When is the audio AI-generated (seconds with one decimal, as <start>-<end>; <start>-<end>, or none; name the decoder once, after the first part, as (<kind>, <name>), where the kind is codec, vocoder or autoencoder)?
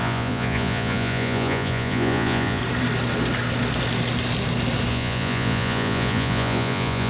0.0-2.6 (vocoder, Vocos); 4.9-7.1